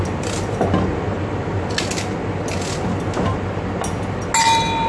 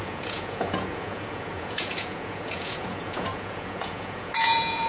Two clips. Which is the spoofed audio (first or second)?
second